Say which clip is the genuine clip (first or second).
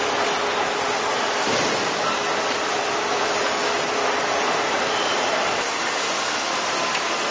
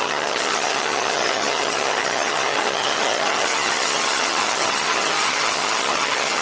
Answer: first